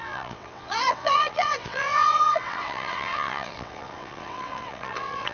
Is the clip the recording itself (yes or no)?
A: no